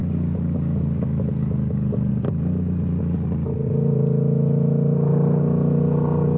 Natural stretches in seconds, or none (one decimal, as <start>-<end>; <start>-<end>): 2.1-6.4